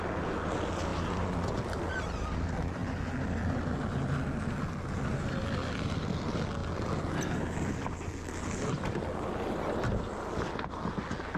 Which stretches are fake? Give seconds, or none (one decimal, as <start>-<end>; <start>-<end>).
none